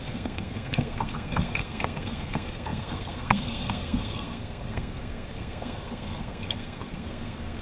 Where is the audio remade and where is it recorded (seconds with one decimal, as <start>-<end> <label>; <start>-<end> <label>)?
0.0-7.6 remade